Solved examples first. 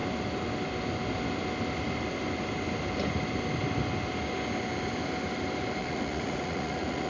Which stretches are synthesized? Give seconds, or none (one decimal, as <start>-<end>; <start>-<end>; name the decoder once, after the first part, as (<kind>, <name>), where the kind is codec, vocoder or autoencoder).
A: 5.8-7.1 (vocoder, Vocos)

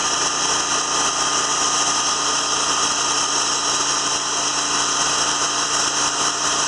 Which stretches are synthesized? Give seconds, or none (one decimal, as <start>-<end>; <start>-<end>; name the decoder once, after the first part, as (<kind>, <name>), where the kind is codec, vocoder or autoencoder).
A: none

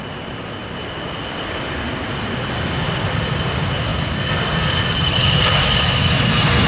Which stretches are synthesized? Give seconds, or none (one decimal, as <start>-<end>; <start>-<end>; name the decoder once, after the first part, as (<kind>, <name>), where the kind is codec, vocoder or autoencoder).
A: none

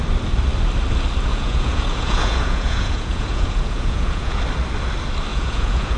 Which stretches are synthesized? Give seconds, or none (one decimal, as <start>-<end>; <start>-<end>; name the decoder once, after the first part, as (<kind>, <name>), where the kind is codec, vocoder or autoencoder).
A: 1.3-4.4 (vocoder, Vocos); 5.3-6.0

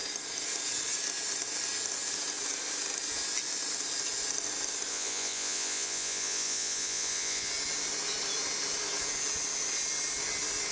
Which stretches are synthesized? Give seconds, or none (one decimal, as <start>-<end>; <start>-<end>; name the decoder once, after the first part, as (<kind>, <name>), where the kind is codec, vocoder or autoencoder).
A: 4.9-7.5 (vocoder, Vocos)

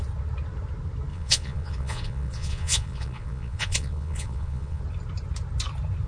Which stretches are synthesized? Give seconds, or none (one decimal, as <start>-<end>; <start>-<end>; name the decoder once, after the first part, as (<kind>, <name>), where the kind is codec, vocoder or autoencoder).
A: 1.1-4.8 (vocoder, Vocos)

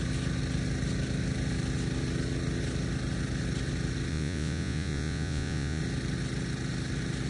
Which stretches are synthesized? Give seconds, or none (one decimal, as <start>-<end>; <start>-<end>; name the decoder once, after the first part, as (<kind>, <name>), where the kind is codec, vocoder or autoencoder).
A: 4.1-5.8 (vocoder, Vocos)